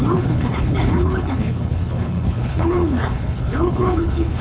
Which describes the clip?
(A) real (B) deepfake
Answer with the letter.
B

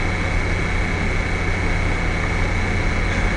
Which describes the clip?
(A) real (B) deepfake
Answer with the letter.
A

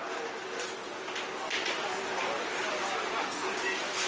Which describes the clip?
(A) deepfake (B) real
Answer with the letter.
B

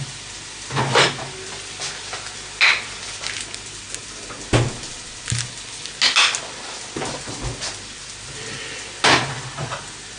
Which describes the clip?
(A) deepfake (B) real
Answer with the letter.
B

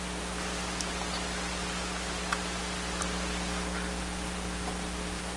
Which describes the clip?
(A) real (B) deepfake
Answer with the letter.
A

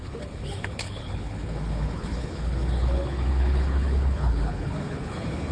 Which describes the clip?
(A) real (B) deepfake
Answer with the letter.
B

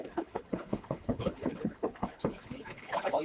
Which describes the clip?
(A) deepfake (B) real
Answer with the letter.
A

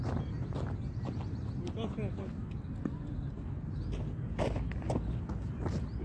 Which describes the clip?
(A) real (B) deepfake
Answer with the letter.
A